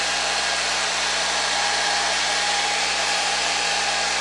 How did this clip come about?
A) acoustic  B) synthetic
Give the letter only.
B